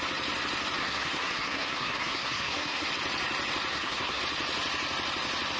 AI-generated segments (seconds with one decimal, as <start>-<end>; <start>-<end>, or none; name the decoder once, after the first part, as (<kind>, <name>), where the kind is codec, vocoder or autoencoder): 0.8-2.9 (codec, SNAC); 3.7-4.2